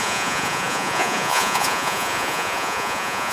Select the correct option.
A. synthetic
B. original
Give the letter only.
A